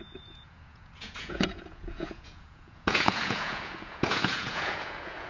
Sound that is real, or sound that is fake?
fake